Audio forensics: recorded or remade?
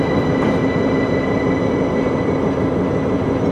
recorded